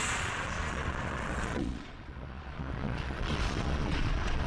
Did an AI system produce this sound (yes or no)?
yes